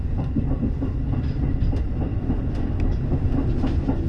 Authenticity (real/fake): real